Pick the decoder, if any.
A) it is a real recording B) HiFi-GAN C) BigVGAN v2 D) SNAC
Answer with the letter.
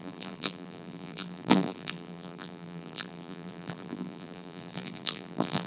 C